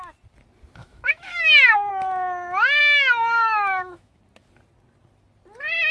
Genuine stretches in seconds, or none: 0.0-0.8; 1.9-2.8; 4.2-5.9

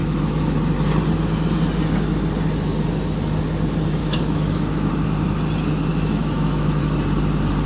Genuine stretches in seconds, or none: 0.6-4.0; 4.9-5.9; 6.8-7.7

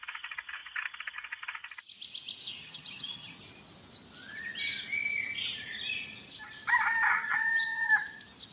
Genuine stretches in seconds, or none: 0.0-2.6; 3.4-7.1; 7.9-8.5